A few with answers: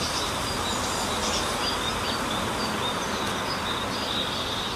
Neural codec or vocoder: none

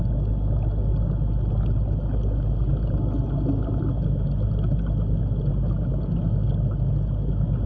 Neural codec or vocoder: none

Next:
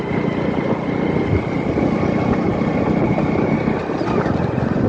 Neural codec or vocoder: none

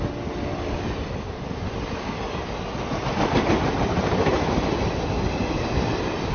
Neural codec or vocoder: none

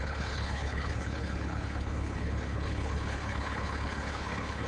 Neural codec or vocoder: codec, HILCodec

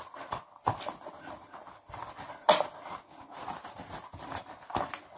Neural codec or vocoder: none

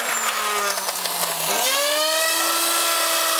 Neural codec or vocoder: none